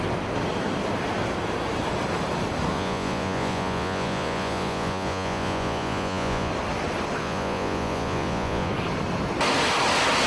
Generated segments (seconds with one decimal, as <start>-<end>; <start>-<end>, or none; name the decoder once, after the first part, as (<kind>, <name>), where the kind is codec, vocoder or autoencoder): 2.7-6.5 (vocoder, Vocos); 7.2-8.7

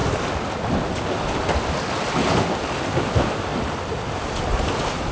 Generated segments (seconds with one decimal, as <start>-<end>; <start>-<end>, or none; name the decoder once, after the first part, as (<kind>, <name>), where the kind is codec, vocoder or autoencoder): none

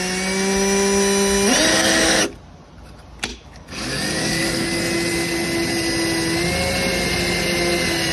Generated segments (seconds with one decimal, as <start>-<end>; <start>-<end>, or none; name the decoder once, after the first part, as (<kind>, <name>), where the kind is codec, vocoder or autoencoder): 1.7-2.2 (codec, DAC); 3.3-4.8

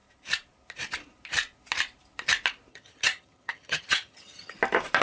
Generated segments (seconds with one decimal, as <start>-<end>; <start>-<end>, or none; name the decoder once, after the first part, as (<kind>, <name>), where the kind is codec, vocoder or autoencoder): 2.7-4.6 (vocoder, HiFi-GAN)

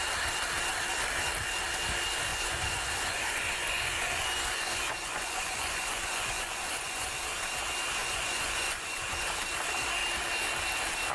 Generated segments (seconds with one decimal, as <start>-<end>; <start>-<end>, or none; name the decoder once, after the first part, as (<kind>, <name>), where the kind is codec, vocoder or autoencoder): 2.3-7.1 (vocoder, Vocos); 8.0-9.3

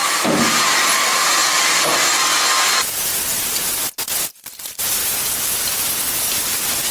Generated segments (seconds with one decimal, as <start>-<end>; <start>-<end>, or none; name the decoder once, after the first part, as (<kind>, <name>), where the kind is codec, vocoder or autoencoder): 0.0-1.4 (vocoder, BigVGAN v2); 4.3-5.0; 6.3-6.9

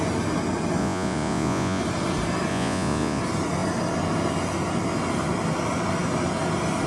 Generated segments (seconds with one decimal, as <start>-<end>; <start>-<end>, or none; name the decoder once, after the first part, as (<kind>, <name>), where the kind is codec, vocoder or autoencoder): 0.8-1.8 (vocoder, Vocos); 2.5-3.2

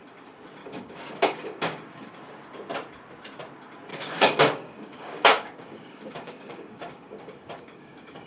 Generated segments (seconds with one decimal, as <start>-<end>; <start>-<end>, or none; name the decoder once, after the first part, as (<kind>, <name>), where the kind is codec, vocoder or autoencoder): 0.6-2.1 (codec, DAC); 3.9-8.3